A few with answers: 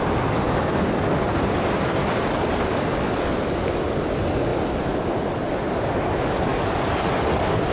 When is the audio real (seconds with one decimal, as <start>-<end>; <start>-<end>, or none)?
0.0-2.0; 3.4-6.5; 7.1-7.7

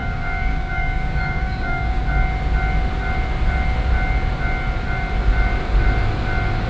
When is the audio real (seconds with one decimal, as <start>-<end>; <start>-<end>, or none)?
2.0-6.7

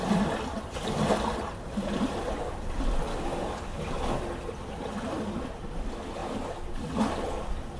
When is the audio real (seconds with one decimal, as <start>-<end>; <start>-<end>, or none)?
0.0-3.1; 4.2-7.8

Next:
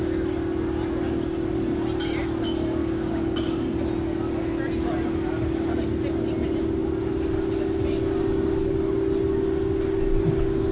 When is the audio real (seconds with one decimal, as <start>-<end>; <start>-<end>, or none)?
0.0-2.8; 3.4-10.7

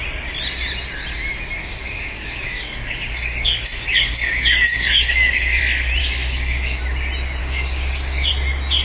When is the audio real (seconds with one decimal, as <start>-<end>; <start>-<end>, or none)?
0.0-1.6; 5.6-6.0; 6.8-7.4; 8.3-8.8

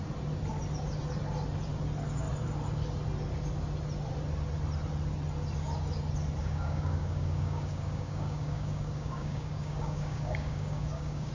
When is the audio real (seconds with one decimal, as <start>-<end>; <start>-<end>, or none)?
0.0-6.4

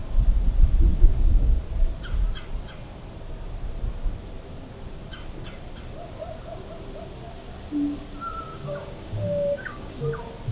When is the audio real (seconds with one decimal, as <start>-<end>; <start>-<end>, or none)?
0.0-0.9; 1.6-8.5; 10.0-10.5